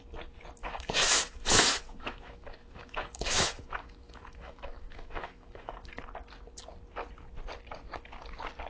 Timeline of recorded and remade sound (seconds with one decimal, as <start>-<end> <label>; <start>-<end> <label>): 0.0-0.6 recorded; 0.6-5.7 remade; 5.7-8.7 recorded